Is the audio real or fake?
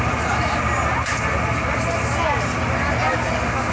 real